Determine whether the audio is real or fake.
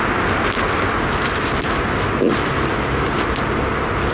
real